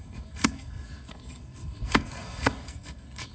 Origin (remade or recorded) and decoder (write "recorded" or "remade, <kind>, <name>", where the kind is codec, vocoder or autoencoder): remade, codec, SNAC